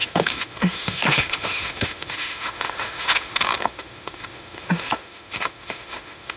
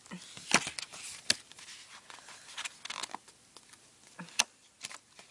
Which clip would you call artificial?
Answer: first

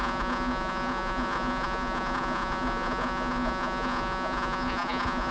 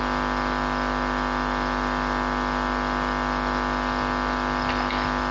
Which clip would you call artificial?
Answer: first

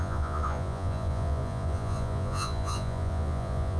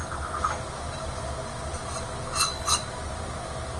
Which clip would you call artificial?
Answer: first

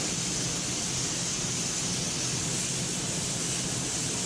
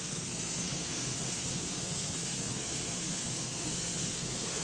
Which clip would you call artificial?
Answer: second